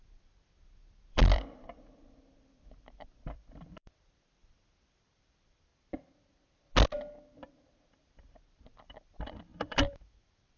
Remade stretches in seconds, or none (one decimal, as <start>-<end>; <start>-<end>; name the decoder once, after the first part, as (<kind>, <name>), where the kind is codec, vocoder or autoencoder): 0.0-5.7 (vocoder, BigVGAN v2); 7.9-10.6